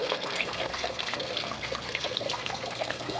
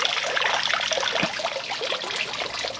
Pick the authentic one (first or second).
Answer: second